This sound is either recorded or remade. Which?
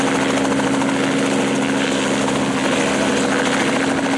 recorded